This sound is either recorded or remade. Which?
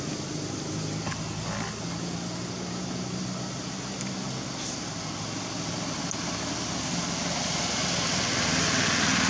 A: recorded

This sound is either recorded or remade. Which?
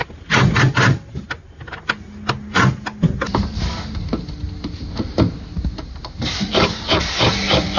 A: recorded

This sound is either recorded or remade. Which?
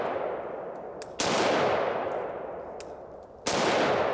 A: recorded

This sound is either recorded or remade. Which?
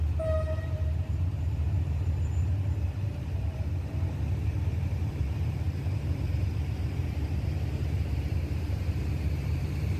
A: remade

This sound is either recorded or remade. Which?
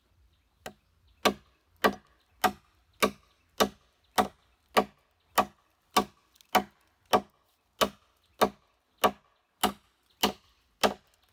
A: recorded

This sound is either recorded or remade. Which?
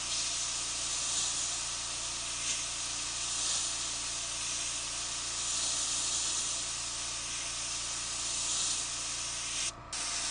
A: recorded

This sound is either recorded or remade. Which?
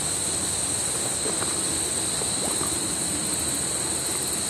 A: recorded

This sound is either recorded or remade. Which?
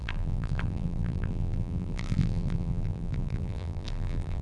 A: remade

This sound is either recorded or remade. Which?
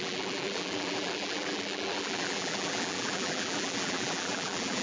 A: remade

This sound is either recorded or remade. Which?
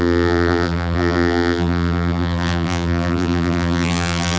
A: remade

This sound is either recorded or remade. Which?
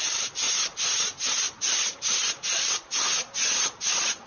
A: recorded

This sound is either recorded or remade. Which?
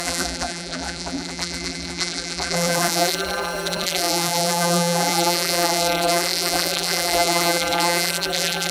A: remade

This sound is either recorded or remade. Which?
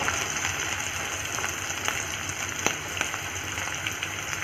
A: remade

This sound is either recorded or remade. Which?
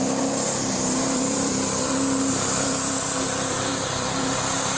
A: remade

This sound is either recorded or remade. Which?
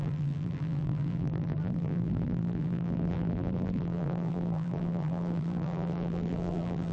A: remade